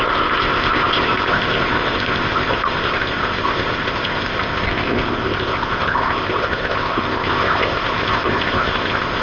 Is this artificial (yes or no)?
yes